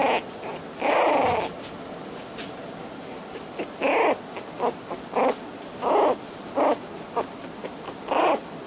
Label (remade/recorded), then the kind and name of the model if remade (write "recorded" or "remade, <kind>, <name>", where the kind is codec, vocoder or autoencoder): recorded